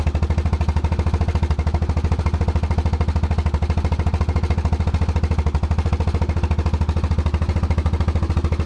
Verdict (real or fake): real